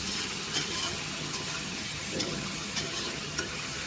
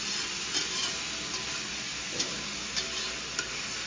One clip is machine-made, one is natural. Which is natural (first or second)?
second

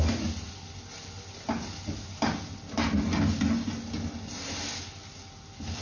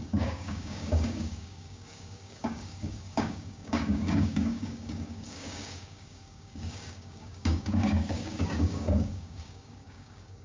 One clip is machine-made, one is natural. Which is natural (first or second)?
first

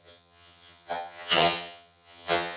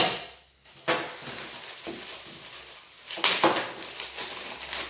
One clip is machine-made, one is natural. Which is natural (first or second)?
second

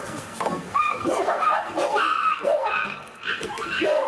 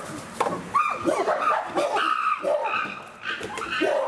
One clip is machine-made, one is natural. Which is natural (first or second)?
second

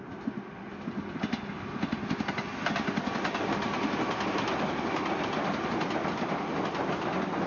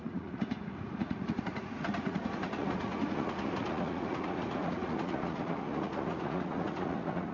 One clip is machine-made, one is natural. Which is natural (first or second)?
first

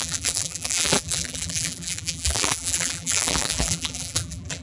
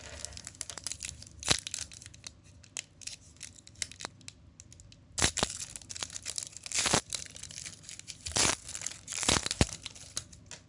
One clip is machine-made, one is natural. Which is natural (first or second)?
second